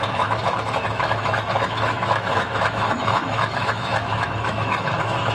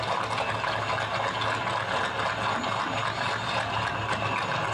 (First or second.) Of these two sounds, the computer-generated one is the first